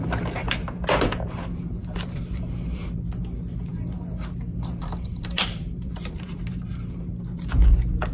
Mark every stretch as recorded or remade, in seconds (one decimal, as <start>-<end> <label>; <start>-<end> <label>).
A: 0.0-1.8 recorded; 1.8-3.1 remade; 3.1-4.8 recorded; 4.8-6.6 remade; 6.6-8.1 recorded